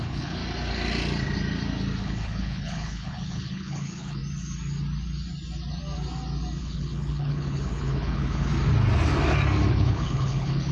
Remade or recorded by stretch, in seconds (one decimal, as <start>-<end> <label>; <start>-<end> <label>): 0.0-0.4 remade; 0.4-2.0 recorded; 2.0-4.2 remade; 4.2-6.6 recorded; 6.6-8.5 remade; 8.5-9.7 recorded; 9.7-10.7 remade